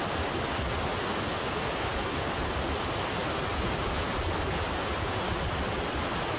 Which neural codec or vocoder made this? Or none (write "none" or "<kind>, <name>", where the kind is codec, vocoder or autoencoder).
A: none